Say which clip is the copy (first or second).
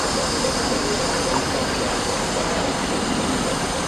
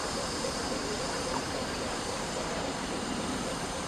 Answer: second